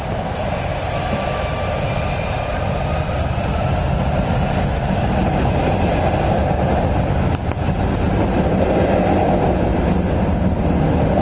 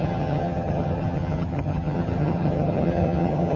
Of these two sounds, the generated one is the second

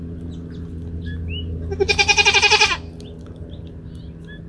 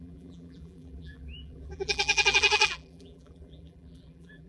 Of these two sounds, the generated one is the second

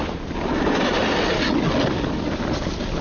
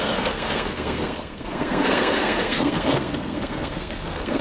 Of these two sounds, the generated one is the second